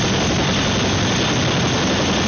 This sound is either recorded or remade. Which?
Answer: recorded